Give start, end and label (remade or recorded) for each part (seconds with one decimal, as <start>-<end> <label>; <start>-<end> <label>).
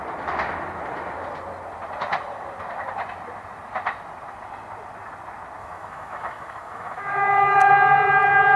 0.0-5.6 recorded; 5.6-7.7 remade; 7.7-8.6 recorded